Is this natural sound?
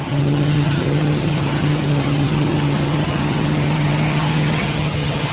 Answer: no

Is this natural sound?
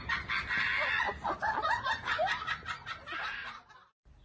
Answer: yes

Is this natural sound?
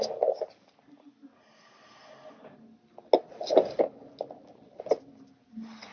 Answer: yes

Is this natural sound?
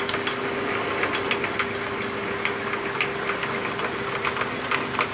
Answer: yes